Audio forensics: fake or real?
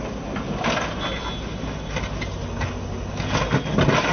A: real